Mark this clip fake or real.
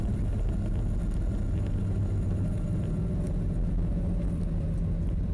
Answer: real